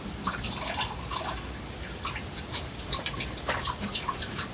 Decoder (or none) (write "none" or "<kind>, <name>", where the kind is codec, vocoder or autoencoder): vocoder, BigVGAN v2